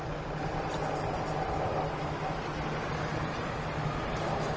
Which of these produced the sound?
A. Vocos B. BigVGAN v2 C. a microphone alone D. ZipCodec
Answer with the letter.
C